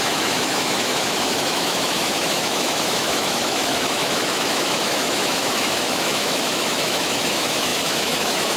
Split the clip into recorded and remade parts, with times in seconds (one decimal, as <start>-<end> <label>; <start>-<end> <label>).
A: 0.0-8.6 remade